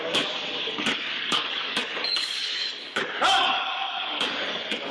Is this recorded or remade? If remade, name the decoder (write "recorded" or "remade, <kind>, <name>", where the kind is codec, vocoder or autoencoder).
remade, codec, DAC